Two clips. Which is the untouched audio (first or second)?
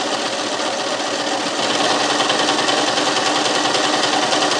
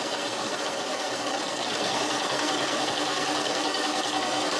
first